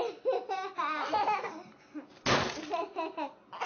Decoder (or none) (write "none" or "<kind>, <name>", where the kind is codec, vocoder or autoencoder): none